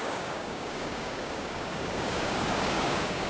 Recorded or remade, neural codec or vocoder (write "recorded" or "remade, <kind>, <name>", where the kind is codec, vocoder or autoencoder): remade, codec, DAC